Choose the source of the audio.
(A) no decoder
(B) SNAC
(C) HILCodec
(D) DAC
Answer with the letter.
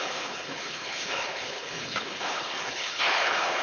C